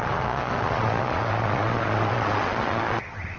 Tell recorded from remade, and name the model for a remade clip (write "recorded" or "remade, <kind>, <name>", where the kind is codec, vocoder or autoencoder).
remade, vocoder, Vocos